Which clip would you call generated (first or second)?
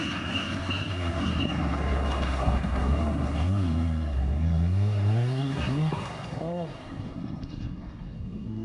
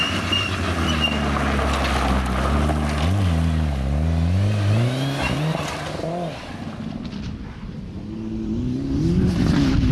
first